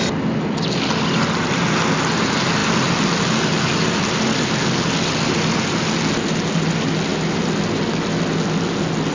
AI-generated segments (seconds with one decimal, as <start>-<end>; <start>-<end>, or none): none